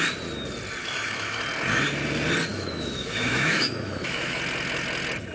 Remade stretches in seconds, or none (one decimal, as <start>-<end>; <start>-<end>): 0.8-1.4; 2.5-4.4